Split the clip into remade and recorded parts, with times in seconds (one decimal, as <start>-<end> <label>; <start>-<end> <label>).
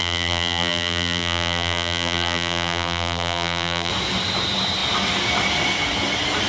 0.0-3.9 remade; 3.9-6.5 recorded